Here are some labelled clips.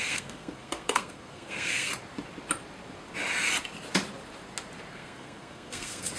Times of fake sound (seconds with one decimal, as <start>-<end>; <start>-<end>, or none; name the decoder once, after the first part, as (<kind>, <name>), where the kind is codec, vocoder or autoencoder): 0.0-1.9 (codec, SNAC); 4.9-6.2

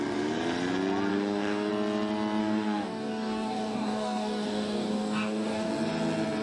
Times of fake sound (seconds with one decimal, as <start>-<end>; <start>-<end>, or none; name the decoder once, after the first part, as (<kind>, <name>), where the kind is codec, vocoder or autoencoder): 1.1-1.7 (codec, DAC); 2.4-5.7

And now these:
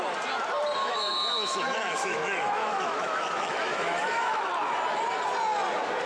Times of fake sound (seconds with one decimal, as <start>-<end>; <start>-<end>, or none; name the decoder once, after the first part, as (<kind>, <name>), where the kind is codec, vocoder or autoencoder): 0.8-4.5 (autoencoder, DAC-VAE)

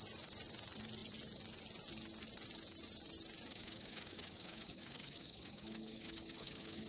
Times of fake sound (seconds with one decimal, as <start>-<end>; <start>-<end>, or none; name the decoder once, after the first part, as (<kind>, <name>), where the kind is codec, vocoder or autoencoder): 3.5-6.9 (codec, DAC)